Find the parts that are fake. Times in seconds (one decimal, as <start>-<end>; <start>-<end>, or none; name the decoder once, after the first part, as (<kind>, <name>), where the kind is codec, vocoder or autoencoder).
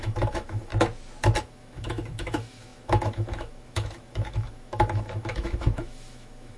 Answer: 0.0-0.7 (autoencoder, DAC-VAE); 1.4-6.6